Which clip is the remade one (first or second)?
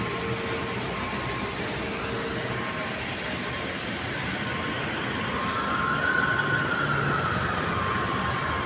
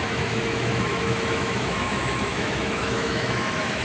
second